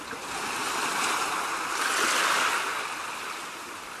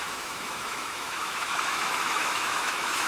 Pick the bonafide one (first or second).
first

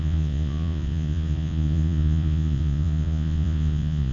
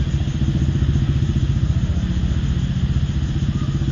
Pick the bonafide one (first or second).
second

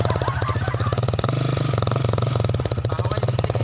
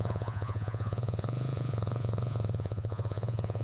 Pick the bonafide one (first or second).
first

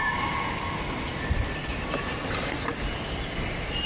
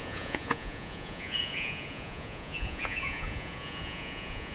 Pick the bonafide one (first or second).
first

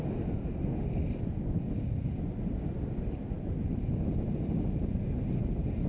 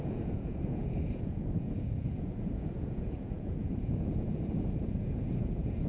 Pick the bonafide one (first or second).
first